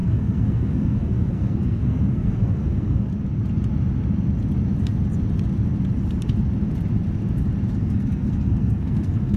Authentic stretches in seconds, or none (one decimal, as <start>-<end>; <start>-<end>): 3.1-7.8